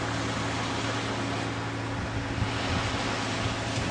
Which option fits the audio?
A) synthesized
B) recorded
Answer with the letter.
B